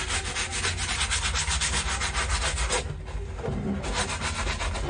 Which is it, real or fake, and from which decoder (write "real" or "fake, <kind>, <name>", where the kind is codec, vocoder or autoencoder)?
real